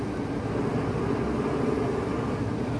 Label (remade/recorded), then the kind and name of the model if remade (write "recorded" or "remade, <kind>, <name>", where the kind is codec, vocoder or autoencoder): recorded